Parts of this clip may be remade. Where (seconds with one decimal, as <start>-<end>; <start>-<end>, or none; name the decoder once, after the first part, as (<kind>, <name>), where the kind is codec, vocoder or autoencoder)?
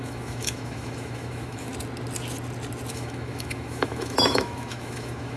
0.0-1.7 (autoencoder, DAC-VAE); 2.9-5.4